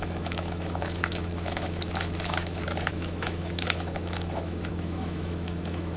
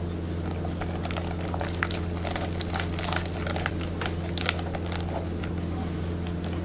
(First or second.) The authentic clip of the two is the second